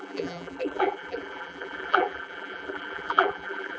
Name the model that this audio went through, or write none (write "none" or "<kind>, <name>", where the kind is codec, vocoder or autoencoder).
vocoder, BigVGAN v2